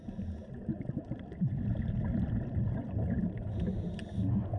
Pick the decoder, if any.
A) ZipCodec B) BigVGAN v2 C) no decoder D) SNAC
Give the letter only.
C